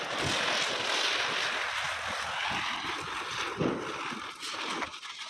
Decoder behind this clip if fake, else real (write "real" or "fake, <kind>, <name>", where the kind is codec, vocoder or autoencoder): real